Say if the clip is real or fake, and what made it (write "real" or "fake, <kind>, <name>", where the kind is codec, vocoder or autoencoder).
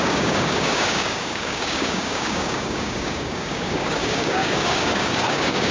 fake, codec, DAC